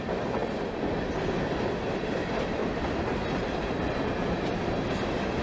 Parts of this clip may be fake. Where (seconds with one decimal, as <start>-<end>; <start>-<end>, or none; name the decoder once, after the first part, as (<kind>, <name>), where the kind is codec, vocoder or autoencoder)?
0.0-0.4 (vocoder, BigVGAN v2); 1.4-2.6; 3.4-5.4